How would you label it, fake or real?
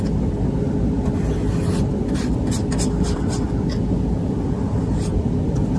real